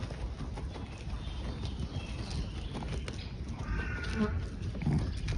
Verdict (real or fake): real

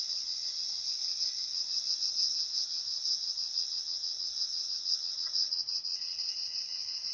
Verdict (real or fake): fake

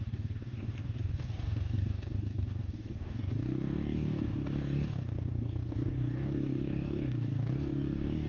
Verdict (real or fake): fake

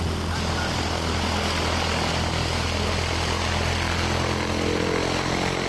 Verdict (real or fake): real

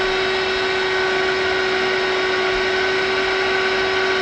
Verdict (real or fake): real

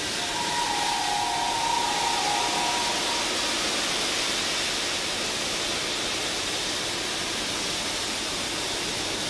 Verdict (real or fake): real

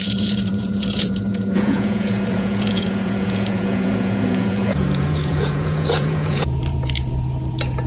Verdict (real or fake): fake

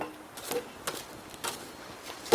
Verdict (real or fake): fake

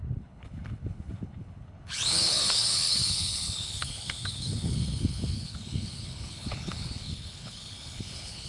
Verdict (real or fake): fake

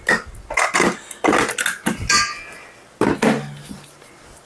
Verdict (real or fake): real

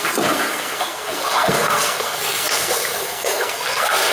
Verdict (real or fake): fake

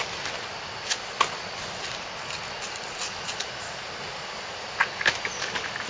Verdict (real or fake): real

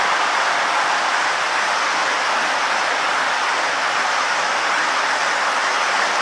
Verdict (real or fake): real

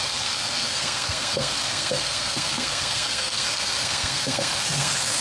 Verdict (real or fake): fake